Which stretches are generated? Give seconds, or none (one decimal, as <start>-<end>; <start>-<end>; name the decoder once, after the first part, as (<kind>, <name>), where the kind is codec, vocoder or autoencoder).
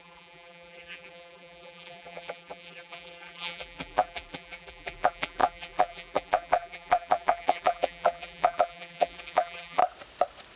0.0-9.8 (vocoder, BigVGAN v2)